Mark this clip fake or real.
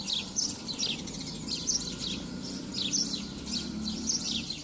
real